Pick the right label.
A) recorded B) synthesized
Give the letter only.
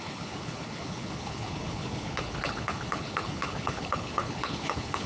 B